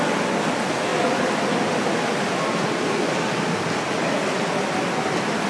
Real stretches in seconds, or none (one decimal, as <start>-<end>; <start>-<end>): 0.0-5.5